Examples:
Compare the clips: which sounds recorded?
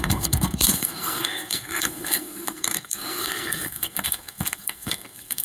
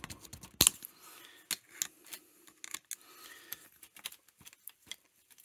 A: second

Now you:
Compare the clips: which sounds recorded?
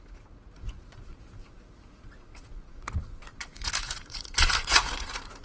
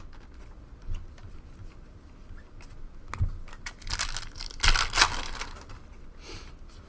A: second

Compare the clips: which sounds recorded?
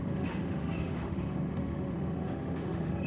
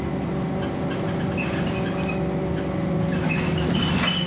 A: second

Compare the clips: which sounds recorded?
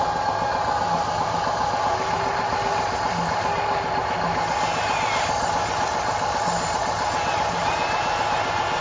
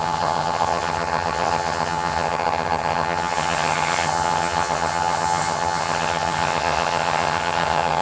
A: first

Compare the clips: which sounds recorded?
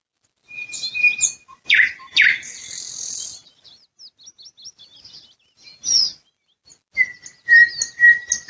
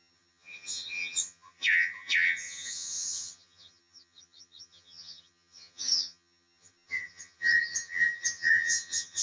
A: first